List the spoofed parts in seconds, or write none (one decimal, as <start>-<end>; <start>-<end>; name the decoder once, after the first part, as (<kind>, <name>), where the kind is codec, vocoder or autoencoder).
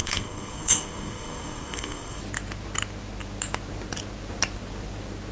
0.0-2.2 (codec, SNAC)